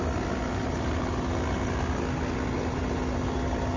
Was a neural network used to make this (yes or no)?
no